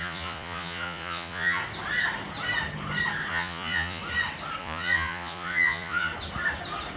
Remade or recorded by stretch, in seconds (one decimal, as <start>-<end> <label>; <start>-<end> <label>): 0.0-1.6 remade; 1.6-3.3 recorded; 3.3-4.0 remade; 4.0-4.6 recorded; 4.6-6.1 remade; 6.1-7.0 recorded